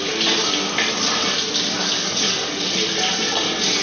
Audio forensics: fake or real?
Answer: real